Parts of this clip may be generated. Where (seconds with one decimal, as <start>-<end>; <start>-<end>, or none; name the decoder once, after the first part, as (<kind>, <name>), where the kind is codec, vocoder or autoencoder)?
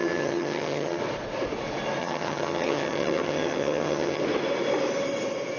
0.0-1.0 (vocoder, HiFi-GAN); 2.0-4.2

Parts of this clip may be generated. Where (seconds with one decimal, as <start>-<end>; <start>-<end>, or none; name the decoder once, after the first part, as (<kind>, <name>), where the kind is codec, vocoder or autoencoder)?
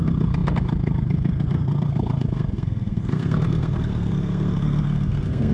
0.0-5.5 (codec, SNAC)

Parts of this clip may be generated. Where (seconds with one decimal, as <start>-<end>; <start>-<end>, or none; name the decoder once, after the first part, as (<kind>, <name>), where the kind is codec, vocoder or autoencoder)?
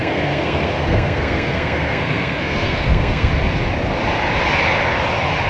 0.0-3.3 (codec, SNAC)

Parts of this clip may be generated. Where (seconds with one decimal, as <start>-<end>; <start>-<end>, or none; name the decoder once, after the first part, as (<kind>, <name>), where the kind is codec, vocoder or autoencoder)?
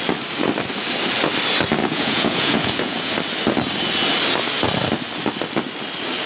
1.8-3.1 (vocoder, Vocos)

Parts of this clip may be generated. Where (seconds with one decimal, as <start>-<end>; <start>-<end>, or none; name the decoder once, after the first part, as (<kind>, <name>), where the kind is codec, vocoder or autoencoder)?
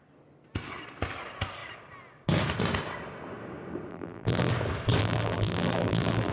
3.9-4.5 (vocoder, BigVGAN v2); 5.0-6.3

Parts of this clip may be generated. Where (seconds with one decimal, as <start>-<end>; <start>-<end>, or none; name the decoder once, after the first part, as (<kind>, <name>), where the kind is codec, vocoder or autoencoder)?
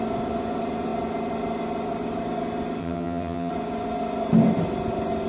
2.8-3.5 (vocoder, HiFi-GAN)